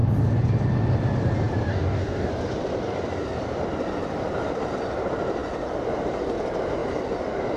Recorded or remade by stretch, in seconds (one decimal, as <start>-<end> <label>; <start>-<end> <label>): 0.0-1.7 recorded; 1.7-2.3 remade; 2.3-7.6 recorded